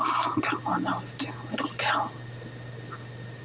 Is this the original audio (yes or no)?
yes